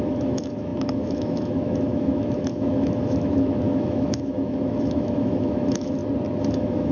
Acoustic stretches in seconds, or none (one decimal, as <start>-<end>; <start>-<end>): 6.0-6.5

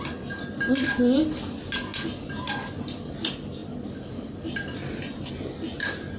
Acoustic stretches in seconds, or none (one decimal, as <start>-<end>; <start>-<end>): 0.0-6.2

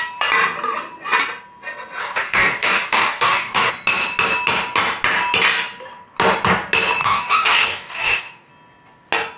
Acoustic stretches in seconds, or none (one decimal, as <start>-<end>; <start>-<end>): 0.0-2.0; 3.7-7.0; 8.5-9.4